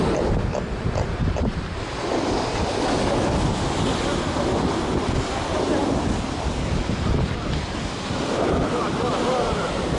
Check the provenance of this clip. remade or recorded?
recorded